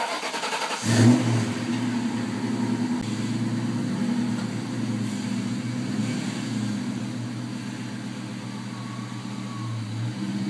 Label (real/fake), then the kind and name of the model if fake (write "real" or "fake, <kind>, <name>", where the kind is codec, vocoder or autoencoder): real